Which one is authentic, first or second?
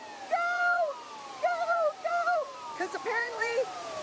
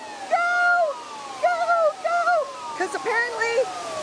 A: second